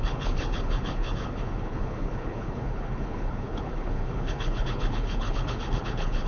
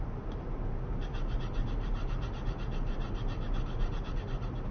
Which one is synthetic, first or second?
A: first